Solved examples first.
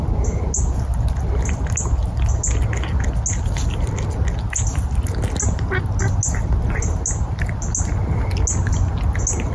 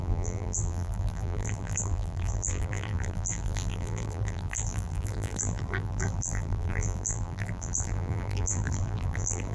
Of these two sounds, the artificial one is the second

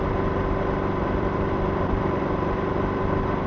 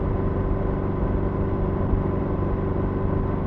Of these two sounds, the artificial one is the first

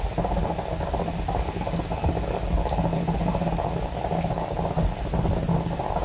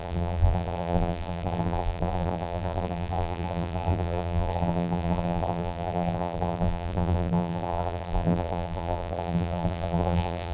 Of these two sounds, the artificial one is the second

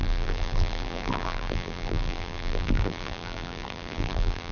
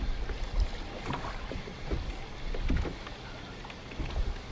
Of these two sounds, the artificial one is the first